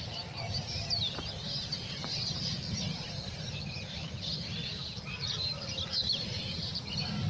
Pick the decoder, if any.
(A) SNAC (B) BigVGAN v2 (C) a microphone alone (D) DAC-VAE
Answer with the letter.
B